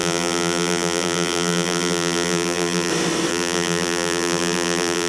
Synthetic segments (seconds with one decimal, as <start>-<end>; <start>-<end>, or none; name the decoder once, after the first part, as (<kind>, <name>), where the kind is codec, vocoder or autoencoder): 0.0-2.9 (vocoder, BigVGAN v2); 3.3-5.1